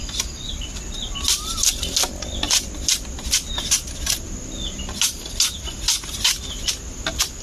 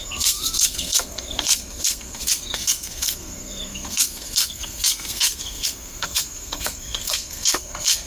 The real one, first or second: first